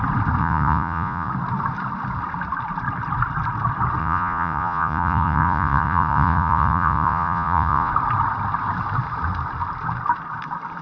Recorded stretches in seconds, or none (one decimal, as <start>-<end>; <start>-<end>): 0.0-0.4; 1.3-4.0; 7.9-10.8